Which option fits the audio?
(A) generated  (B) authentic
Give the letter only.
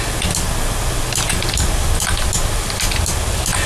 B